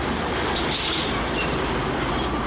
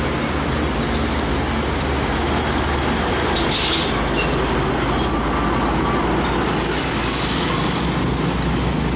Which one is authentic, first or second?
second